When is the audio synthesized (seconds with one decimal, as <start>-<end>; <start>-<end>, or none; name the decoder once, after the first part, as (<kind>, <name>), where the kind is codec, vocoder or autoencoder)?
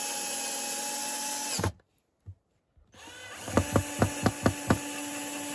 none